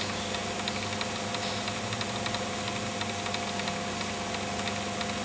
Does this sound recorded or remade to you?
recorded